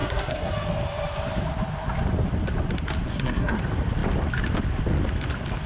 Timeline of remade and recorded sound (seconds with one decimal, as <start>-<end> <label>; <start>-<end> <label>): 0.0-0.5 remade; 0.5-3.1 recorded; 3.1-3.6 remade; 3.6-5.7 recorded